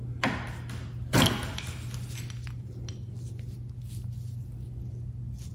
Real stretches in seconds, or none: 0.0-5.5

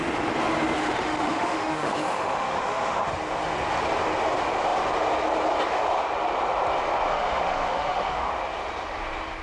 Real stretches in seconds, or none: 0.0-0.8; 3.1-7.1; 8.3-9.4